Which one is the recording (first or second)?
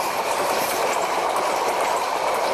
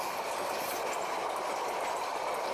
second